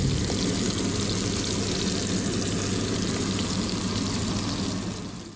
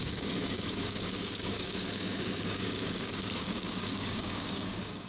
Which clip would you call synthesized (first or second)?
second